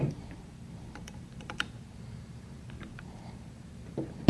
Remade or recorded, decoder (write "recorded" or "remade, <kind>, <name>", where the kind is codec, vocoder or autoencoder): remade, vocoder, BigVGAN v2